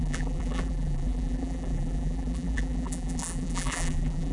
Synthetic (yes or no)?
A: yes